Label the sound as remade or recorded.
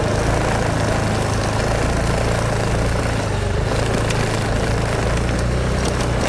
recorded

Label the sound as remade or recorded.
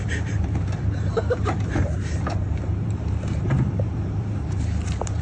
remade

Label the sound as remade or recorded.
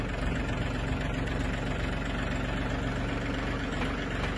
recorded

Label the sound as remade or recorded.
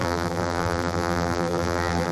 remade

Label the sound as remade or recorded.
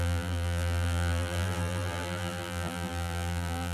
remade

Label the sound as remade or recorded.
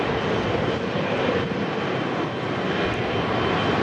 recorded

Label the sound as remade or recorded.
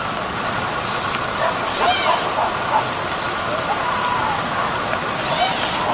recorded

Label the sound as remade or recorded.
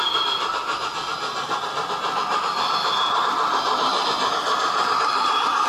recorded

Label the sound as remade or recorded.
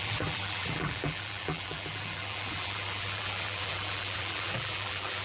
remade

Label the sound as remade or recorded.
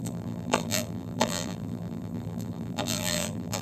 remade